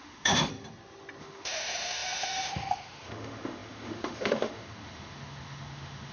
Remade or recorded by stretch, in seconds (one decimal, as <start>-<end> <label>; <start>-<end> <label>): 0.0-0.5 remade; 0.5-1.2 recorded; 1.2-6.1 remade